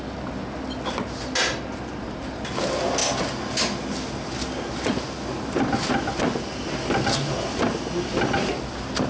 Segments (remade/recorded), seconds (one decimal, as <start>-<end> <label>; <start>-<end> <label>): 0.0-9.1 recorded